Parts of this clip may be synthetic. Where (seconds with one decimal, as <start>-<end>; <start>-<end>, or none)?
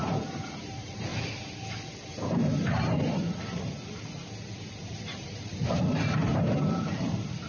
0.6-1.1; 5.0-7.5